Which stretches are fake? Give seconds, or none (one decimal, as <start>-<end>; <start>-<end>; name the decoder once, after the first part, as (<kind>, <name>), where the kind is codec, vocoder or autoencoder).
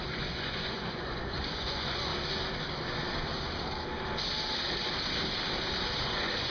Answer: 0.0-2.1 (vocoder, Vocos); 6.0-6.5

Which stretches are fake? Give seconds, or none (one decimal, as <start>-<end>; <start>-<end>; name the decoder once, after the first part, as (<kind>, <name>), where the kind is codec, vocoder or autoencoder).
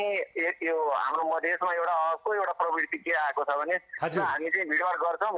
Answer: none